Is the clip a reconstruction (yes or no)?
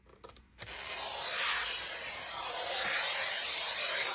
no